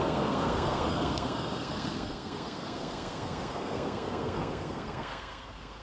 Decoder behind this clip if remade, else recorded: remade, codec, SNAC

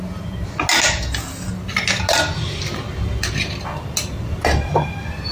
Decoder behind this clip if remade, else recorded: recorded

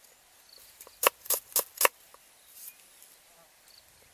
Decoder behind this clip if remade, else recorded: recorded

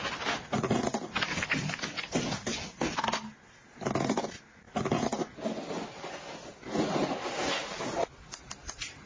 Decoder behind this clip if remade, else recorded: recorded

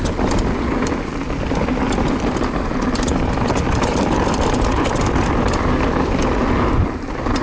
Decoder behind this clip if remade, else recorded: recorded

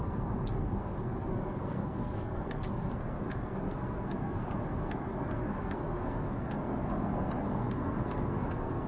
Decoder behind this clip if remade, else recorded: remade, codec, SNAC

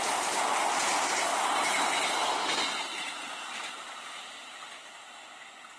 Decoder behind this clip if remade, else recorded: recorded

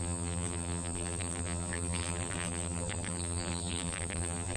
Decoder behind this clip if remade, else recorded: remade, vocoder, BigVGAN v2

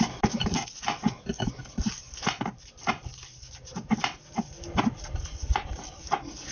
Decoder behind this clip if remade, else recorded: recorded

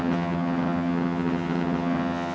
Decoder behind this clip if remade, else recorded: remade, vocoder, HiFi-GAN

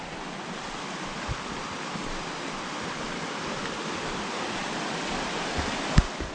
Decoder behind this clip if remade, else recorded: recorded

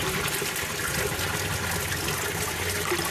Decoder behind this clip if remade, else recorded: recorded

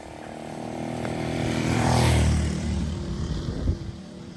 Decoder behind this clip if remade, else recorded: remade, vocoder, BigVGAN v2